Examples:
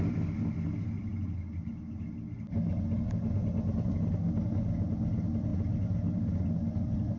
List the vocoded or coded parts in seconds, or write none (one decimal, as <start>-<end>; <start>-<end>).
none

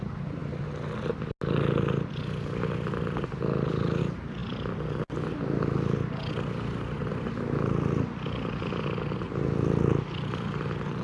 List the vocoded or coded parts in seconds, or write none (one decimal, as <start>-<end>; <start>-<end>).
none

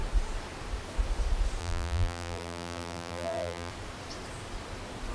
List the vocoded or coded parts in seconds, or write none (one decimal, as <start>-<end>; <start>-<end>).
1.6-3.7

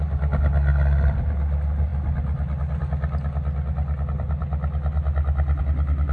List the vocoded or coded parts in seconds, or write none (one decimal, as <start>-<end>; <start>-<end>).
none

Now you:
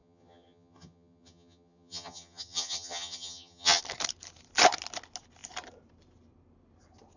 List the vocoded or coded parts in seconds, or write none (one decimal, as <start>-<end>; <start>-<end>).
0.0-3.8

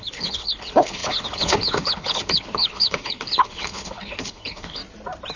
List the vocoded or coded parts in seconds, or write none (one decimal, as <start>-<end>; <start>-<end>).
0.0-4.8